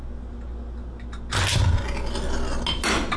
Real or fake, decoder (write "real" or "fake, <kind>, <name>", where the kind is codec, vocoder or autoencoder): real